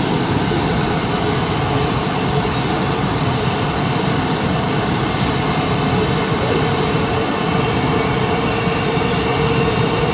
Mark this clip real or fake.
real